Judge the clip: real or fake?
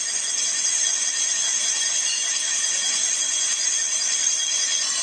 fake